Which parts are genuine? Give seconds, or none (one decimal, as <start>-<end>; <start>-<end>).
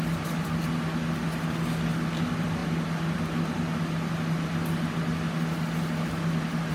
0.0-6.7